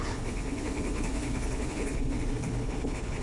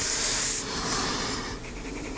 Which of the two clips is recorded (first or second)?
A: second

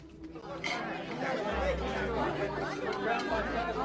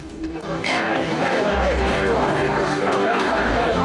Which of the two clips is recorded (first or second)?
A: first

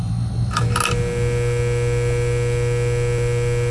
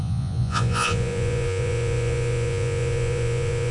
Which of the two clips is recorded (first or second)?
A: first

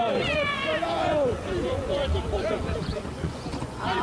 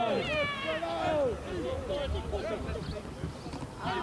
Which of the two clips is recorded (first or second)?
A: second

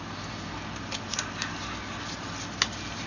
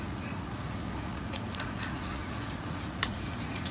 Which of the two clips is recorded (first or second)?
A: first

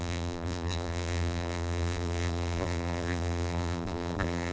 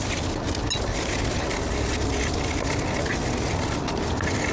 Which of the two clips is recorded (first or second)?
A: second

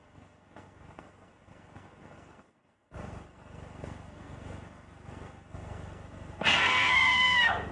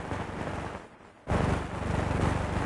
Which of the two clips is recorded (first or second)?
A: second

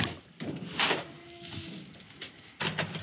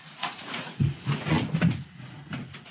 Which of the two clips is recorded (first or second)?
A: first